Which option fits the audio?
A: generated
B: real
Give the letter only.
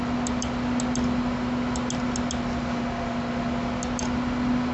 B